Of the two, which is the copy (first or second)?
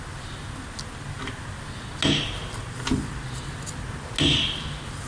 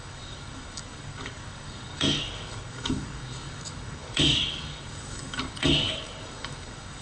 second